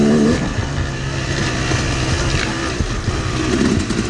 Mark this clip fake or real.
real